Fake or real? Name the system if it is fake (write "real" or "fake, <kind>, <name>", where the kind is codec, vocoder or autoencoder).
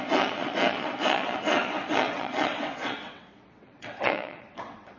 fake, vocoder, WaveNeXt